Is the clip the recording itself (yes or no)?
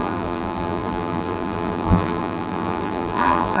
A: no